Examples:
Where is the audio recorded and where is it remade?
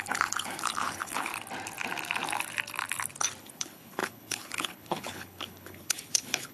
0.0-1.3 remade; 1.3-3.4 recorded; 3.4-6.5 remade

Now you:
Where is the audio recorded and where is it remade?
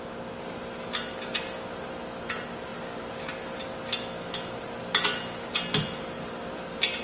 0.0-7.0 recorded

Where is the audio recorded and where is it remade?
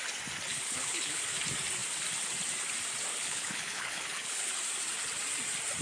0.0-0.5 recorded; 0.5-1.2 remade; 1.2-3.1 recorded; 3.1-4.5 remade; 4.5-5.8 recorded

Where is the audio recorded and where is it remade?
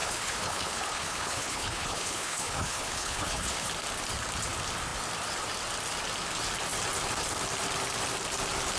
0.0-3.7 remade; 3.7-8.8 recorded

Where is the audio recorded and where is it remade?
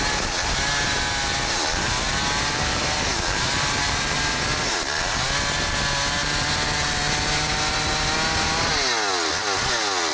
0.0-10.1 recorded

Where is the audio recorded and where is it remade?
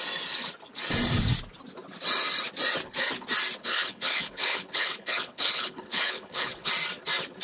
0.0-3.6 recorded; 3.6-6.7 remade; 6.7-7.4 recorded